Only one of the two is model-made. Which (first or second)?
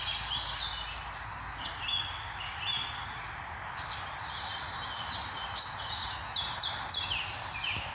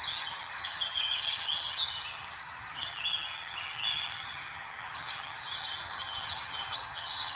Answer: second